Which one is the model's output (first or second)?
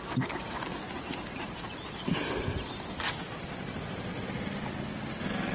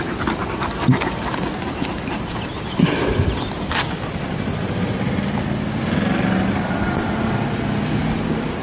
first